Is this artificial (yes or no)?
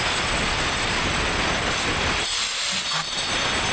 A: no